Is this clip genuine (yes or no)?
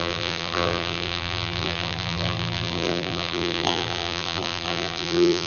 no